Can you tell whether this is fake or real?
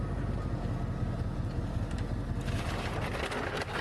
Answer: real